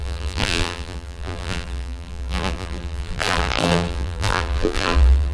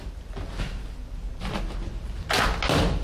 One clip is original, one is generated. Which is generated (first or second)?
first